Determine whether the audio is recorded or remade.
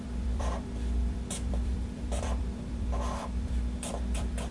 remade